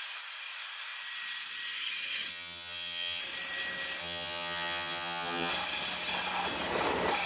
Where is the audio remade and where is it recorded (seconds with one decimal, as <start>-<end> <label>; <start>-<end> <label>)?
0.0-2.3 recorded; 2.3-3.2 remade; 3.2-4.0 recorded; 4.0-5.5 remade; 5.5-7.3 recorded